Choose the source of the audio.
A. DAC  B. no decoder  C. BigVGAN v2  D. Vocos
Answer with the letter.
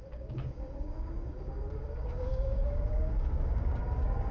A